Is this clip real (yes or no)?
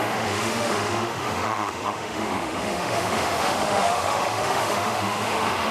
no